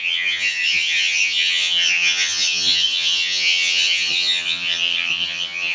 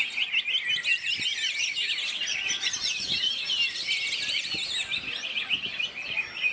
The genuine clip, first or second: second